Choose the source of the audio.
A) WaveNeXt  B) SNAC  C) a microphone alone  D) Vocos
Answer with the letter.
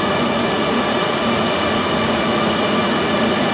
D